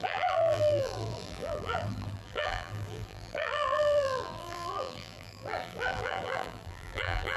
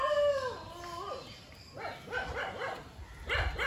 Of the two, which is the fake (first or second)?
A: first